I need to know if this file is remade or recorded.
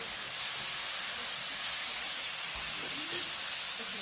recorded